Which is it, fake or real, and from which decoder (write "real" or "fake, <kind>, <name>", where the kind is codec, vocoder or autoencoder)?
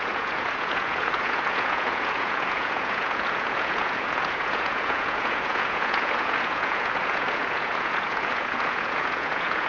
fake, vocoder, Vocos